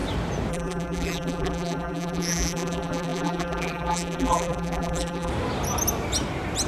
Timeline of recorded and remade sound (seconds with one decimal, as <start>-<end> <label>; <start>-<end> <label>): 0.0-0.5 recorded; 0.5-5.3 remade; 5.3-6.7 recorded